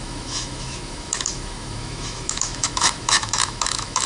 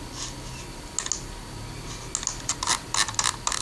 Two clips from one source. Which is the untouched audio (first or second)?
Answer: second